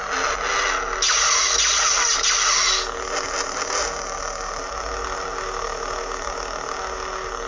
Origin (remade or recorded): recorded